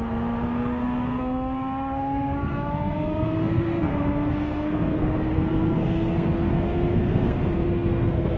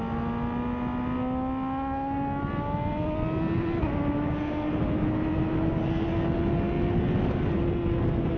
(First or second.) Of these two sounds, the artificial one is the first